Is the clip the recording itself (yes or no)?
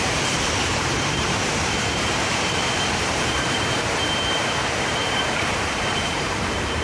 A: no